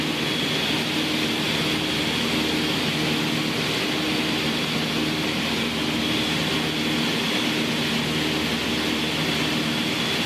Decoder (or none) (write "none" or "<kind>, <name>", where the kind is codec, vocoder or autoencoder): none